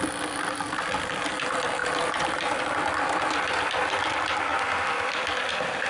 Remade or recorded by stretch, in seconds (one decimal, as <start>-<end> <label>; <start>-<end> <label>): 0.0-5.9 recorded